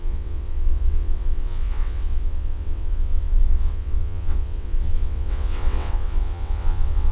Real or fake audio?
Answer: fake